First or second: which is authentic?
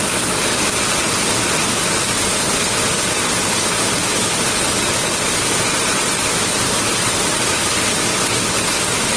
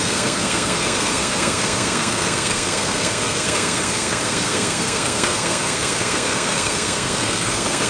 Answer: first